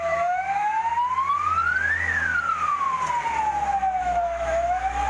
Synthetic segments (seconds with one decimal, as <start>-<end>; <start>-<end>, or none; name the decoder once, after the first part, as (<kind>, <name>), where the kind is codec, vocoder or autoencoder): 0.0-0.9 (autoencoder, DAC-VAE); 4.0-5.1